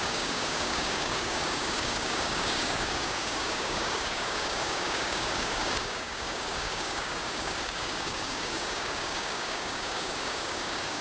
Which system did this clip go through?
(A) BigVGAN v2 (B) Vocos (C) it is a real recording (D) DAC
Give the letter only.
D